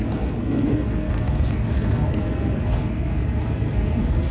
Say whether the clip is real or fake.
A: fake